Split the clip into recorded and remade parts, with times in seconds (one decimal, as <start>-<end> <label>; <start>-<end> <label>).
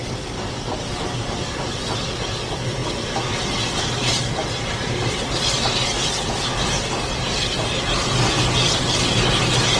0.0-9.8 recorded